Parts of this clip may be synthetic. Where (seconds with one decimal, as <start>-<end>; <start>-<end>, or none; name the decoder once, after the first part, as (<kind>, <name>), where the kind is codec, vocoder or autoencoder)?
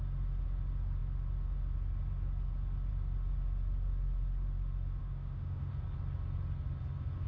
5.0-5.7 (autoencoder, DAC-VAE)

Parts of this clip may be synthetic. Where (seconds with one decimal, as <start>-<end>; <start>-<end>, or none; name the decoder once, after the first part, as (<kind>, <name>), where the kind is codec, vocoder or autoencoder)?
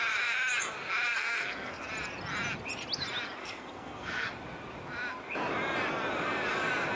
1.1-1.9 (codec, SNAC); 3.4-4.3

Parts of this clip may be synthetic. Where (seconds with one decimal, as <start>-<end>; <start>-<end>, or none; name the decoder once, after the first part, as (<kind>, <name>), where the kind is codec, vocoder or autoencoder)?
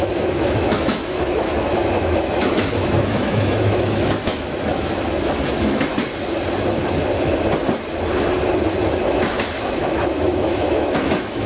0.0-5.9 (autoencoder, DAC-VAE); 9.1-11.5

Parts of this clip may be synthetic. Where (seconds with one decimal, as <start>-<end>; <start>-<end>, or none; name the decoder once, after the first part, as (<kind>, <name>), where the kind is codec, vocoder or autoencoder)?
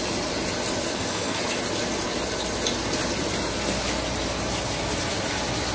0.9-1.4 (codec, SNAC)